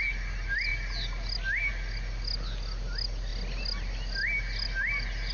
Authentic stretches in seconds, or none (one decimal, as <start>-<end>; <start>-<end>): 0.0-5.3